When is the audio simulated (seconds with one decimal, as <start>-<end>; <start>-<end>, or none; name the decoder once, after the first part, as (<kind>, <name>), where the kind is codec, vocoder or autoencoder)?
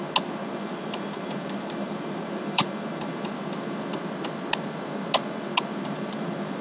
0.4-3.2 (vocoder, BigVGAN v2); 5.7-6.6